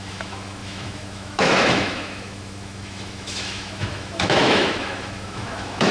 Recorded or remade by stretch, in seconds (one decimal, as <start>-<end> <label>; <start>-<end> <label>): 0.0-5.9 remade